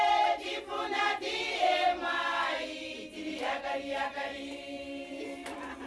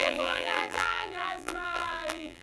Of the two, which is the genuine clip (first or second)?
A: first